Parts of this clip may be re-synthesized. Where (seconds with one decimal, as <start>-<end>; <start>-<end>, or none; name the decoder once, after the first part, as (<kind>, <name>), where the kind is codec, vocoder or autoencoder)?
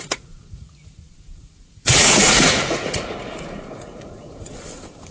0.0-5.1 (vocoder, Vocos)